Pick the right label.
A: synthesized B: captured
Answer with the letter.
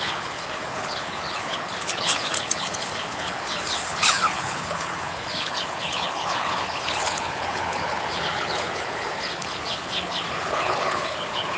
A